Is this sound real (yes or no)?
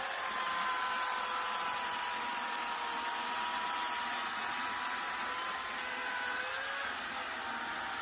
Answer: yes